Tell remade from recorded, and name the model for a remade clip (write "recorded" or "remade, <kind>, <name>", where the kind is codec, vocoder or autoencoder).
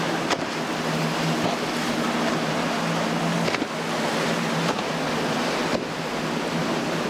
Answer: recorded